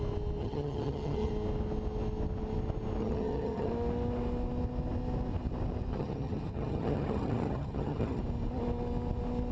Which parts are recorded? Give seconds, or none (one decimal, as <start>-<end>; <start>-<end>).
0.0-0.4; 1.3-3.0; 3.7-5.9; 8.2-9.5